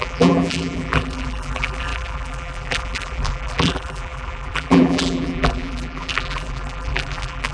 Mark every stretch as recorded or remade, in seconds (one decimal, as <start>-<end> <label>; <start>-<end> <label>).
0.0-7.5 remade